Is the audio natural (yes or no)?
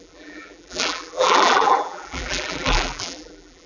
no